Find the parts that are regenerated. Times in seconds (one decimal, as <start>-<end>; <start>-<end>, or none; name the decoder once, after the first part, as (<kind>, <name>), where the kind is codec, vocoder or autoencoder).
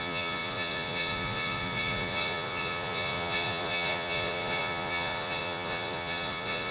0.0-6.7 (vocoder, Vocos)